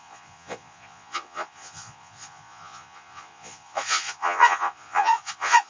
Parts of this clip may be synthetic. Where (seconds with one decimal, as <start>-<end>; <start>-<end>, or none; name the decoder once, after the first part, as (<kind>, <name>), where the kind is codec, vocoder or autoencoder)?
0.0-5.7 (vocoder, Vocos)